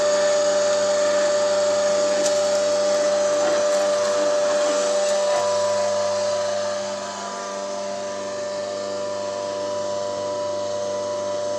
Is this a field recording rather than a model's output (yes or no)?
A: yes